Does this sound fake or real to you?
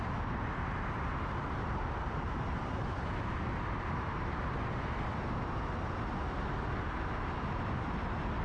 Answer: real